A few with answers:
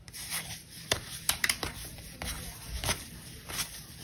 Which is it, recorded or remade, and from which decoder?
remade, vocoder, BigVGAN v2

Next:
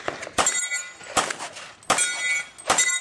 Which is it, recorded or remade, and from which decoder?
recorded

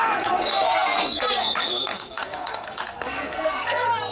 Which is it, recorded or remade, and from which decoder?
remade, codec, SNAC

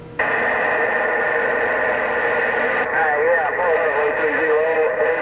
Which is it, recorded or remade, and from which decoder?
recorded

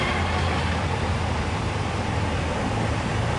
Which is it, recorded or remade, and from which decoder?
recorded